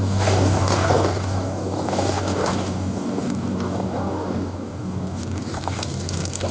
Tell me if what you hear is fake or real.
fake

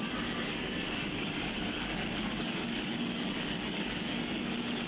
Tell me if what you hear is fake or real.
fake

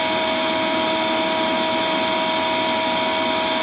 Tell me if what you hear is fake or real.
real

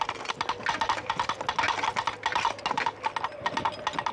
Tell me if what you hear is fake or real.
real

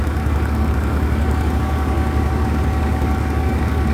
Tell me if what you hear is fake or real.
fake